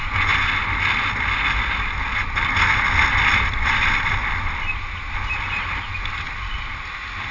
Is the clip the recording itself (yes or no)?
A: yes